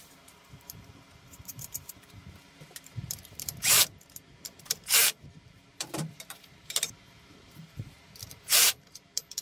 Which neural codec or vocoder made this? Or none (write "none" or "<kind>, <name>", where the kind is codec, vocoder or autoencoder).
vocoder, BigVGAN v2